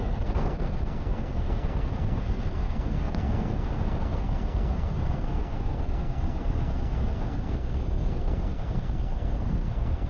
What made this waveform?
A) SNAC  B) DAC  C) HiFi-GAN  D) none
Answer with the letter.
A